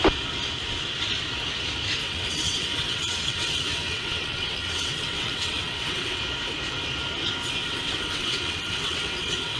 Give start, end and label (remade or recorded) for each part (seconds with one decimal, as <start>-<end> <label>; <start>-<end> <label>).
0.0-2.0 recorded; 2.0-6.2 remade; 6.2-7.6 recorded; 7.6-9.6 remade